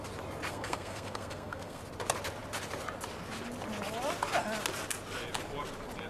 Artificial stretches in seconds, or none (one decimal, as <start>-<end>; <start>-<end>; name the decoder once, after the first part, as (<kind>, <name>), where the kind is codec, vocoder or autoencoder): 0.5-1.8 (codec, SNAC)